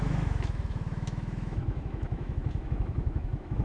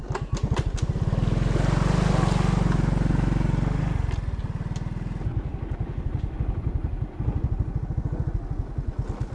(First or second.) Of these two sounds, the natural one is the second